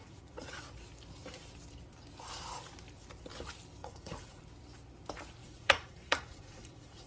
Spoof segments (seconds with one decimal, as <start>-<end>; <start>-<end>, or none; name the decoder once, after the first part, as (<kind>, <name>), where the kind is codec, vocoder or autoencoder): 0.0-0.6 (vocoder, Vocos); 3.8-4.4; 5.4-7.1